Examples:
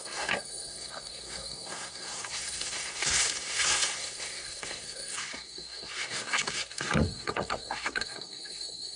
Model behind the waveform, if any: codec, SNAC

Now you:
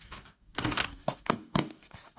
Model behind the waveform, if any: codec, DAC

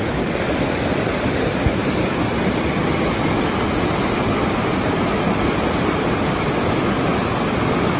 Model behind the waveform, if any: none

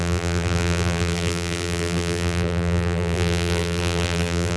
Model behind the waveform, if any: vocoder, BigVGAN v2